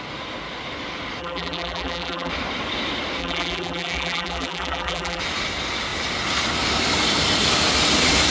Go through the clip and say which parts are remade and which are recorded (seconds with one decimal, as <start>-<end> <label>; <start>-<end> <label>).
0.0-1.2 recorded; 1.2-2.3 remade; 2.3-3.2 recorded; 3.2-5.2 remade; 5.2-8.3 recorded